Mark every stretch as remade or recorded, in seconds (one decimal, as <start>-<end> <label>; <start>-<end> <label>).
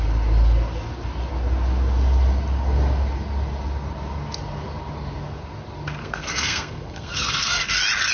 0.0-6.0 recorded; 6.0-7.6 remade; 7.6-8.1 recorded